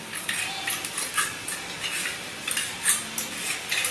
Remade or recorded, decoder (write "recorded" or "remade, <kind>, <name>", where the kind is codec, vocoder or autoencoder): recorded